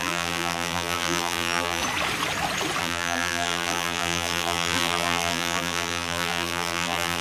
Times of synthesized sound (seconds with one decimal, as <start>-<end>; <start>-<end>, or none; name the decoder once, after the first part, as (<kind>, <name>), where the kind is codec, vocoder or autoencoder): 0.0-1.8 (vocoder, BigVGAN v2); 2.8-7.2